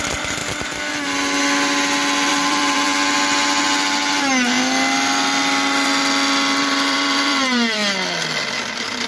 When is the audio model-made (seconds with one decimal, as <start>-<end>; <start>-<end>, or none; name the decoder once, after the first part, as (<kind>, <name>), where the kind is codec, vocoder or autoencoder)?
0.0-0.4 (vocoder, BigVGAN v2); 2.3-2.9; 6.6-7.8; 8.7-9.1